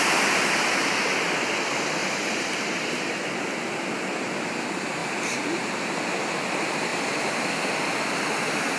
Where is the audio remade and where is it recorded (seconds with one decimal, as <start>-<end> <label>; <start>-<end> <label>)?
0.0-2.0 recorded; 2.0-2.7 remade; 2.7-5.0 recorded; 5.0-5.7 remade; 5.7-8.8 recorded